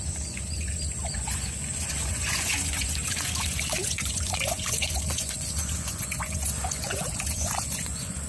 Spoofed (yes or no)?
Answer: yes